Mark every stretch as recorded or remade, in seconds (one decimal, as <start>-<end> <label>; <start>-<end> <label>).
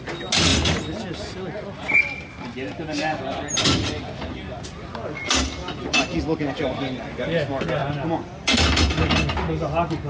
0.0-10.1 recorded